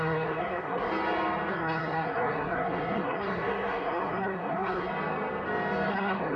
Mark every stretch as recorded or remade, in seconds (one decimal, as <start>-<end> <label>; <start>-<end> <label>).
0.0-0.9 remade; 0.9-1.5 recorded; 1.5-4.9 remade; 4.9-5.9 recorded; 5.9-6.4 remade

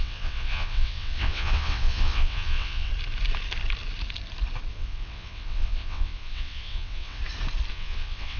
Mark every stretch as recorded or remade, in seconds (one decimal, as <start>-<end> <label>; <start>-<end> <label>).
0.0-2.9 remade; 2.9-4.7 recorded; 4.7-7.2 remade; 7.2-7.7 recorded; 7.7-8.4 remade

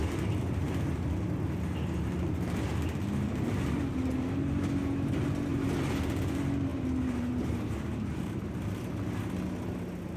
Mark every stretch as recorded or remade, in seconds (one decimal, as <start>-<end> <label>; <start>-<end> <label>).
0.0-6.7 recorded; 6.7-8.5 remade; 8.5-10.2 recorded

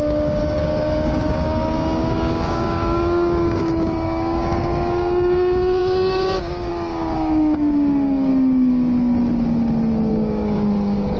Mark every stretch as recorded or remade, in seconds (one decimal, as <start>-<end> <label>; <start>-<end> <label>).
0.0-8.3 remade; 8.3-10.1 recorded; 10.1-11.2 remade

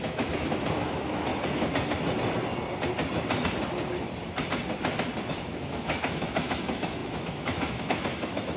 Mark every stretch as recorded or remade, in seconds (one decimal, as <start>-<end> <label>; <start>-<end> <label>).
0.0-1.3 remade; 1.3-5.3 recorded; 5.3-8.6 remade

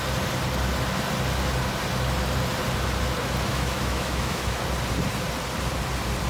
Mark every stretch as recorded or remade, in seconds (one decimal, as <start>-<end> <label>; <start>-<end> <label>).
0.0-3.5 recorded; 3.5-4.6 remade; 4.6-6.3 recorded

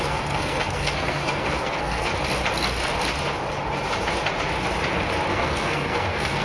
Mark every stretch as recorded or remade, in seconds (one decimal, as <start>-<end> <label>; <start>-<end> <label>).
0.0-2.1 remade; 2.1-5.3 recorded; 5.3-6.4 remade